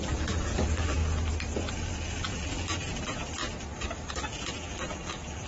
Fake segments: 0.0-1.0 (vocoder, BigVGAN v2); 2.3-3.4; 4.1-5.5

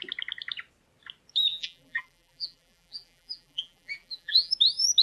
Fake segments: 1.5-4.5 (vocoder, BigVGAN v2)

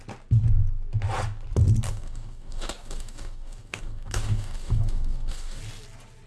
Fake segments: 1.9-5.6 (codec, DAC)